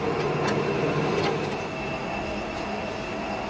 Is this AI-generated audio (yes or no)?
no